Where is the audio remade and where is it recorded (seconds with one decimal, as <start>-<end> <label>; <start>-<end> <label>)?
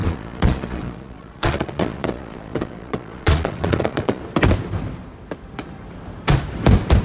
0.0-4.2 remade; 4.2-7.0 recorded